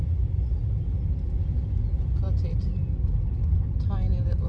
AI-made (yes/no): no